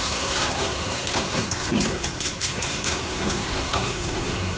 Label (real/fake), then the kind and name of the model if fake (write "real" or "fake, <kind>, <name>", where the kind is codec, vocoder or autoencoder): fake, codec, SNAC